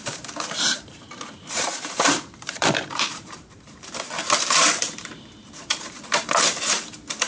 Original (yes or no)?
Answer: no